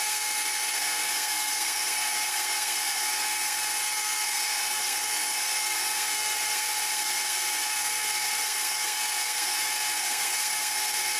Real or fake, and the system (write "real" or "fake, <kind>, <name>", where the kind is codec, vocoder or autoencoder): fake, codec, SNAC